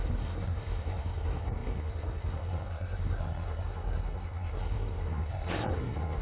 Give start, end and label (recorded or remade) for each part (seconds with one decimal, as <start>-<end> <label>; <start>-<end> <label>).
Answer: 0.0-6.2 remade